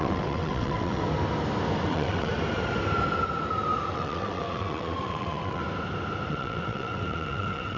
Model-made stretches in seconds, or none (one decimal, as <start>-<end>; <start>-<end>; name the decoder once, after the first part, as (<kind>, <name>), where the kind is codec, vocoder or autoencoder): 0.0-1.0 (vocoder, WaveNeXt); 1.9-2.3; 3.9-5.6; 6.3-7.8